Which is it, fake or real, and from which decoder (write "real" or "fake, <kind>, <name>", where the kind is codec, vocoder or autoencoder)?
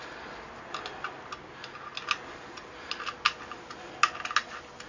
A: real